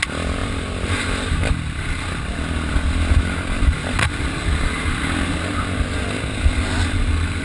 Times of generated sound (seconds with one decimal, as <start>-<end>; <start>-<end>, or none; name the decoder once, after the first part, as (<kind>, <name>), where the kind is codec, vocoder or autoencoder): 0.4-1.5 (vocoder, BigVGAN v2)